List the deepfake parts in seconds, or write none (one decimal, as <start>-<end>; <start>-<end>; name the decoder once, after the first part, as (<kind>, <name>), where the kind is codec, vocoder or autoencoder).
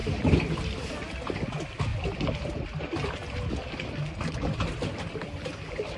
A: none